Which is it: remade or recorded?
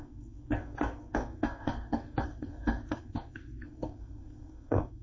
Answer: remade